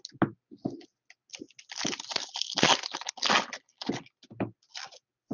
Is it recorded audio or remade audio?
recorded